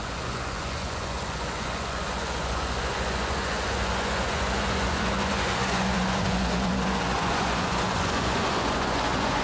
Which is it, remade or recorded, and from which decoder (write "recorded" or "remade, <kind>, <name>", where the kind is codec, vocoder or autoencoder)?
remade, vocoder, Vocos